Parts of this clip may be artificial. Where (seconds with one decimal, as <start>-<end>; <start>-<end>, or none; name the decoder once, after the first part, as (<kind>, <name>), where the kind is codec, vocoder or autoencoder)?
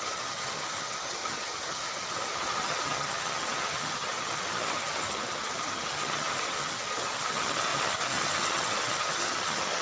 0.0-9.8 (vocoder, HiFi-GAN)